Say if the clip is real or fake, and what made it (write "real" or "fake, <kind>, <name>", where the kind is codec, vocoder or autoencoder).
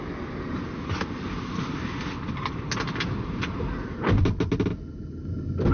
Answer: real